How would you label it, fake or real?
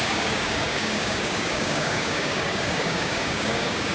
fake